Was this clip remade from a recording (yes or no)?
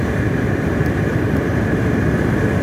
yes